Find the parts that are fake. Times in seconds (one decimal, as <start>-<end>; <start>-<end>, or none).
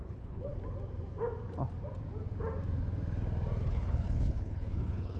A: 0.0-0.5; 3.6-5.2